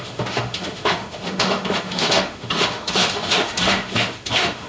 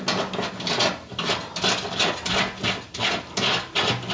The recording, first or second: second